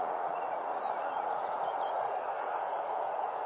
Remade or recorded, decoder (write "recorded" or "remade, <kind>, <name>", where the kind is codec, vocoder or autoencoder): remade, vocoder, Vocos